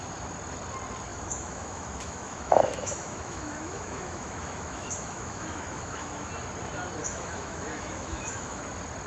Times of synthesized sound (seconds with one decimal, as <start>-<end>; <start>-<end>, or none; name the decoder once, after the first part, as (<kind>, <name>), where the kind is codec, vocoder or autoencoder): 1.1-6.3 (autoencoder, DAC-VAE); 7.0-8.6

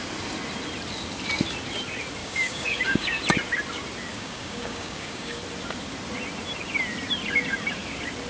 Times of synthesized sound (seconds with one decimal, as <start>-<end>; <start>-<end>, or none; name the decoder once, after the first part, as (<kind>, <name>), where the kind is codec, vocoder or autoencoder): 2.2-3.2 (codec, DAC); 4.1-5.4

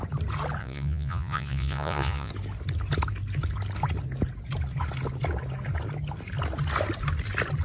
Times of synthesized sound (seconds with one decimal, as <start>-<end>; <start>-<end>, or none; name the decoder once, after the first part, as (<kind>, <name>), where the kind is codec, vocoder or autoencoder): 0.6-2.3 (vocoder, Vocos)

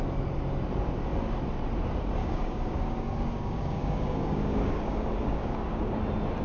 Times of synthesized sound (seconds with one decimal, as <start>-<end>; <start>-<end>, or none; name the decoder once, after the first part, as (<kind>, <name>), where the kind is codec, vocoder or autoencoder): 2.2-6.0 (codec, DAC)